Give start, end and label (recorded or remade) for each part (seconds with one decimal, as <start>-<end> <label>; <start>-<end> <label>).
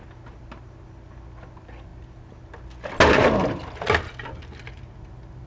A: 0.0-5.5 recorded